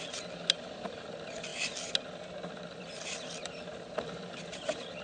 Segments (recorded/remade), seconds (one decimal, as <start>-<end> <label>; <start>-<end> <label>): 0.0-5.0 recorded